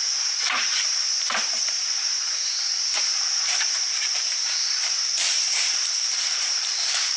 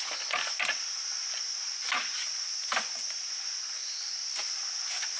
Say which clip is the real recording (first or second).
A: second